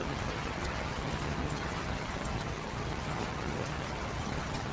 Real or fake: fake